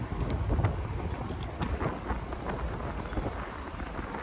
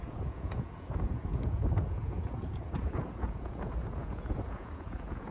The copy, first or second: second